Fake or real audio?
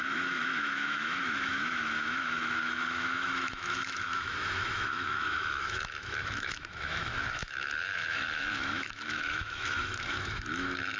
fake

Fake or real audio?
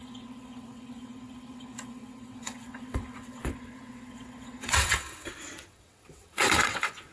fake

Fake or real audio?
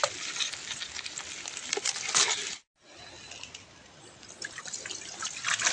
real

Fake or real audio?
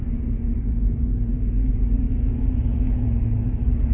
real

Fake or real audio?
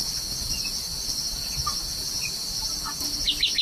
real